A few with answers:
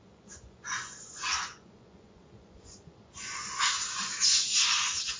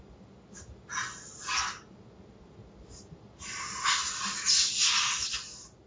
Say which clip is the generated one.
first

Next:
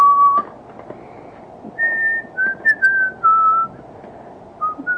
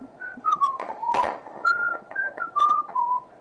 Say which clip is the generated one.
second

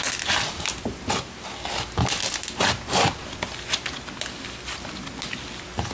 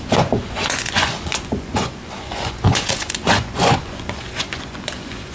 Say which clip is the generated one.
second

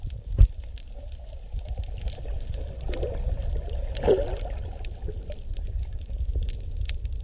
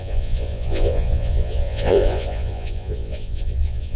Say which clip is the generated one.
second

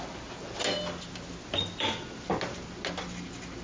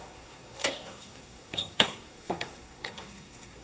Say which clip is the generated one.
second